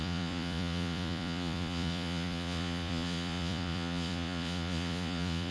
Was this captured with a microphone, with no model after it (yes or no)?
no